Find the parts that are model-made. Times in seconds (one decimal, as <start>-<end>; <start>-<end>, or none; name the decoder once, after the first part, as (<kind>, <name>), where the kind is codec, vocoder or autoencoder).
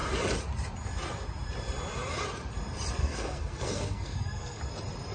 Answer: 3.0-4.6 (codec, SNAC)